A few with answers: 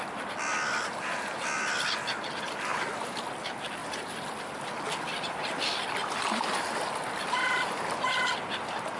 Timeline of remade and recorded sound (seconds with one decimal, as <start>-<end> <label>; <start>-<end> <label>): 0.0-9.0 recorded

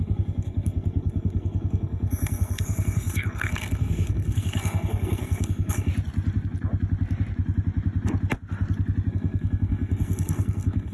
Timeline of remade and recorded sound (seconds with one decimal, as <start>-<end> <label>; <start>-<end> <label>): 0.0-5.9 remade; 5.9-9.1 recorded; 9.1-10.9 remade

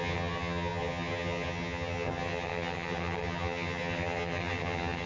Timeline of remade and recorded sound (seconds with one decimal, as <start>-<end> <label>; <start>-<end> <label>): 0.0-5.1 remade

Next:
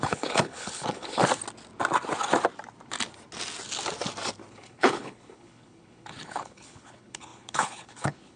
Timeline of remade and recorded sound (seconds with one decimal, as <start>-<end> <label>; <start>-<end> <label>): 0.0-1.2 remade; 1.2-4.5 recorded; 4.5-8.4 remade

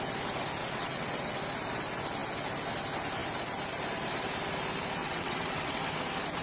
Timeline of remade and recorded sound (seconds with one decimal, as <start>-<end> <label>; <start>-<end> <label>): 0.0-0.6 recorded; 0.6-1.4 remade; 1.4-5.0 recorded; 5.0-5.8 remade; 5.8-6.4 recorded

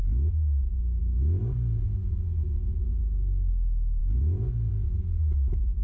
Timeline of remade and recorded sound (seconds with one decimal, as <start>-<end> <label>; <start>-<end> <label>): 0.0-2.9 remade; 2.9-3.5 recorded; 3.5-4.0 remade; 4.0-4.7 recorded; 4.7-5.8 remade